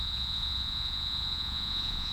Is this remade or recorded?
remade